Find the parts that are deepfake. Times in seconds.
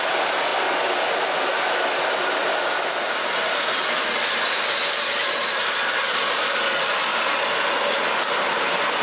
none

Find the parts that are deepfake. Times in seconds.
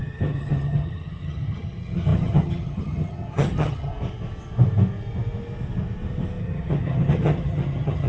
0.0-3.9 (vocoder, HiFi-GAN); 6.4-8.1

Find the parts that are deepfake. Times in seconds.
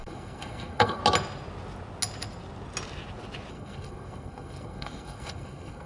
0.0-1.0 (codec, SNAC); 3.5-5.9